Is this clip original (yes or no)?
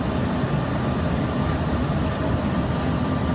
yes